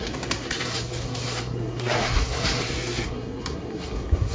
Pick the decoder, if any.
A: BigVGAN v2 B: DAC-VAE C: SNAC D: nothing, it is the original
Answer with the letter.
C